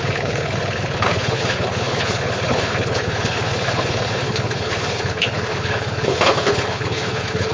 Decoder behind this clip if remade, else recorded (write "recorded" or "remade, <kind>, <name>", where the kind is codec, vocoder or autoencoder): remade, codec, HILCodec